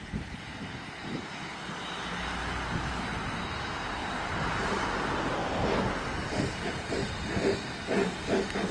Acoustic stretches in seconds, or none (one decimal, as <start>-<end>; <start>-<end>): 0.0-4.0; 4.6-8.7